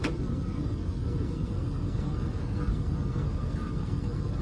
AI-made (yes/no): yes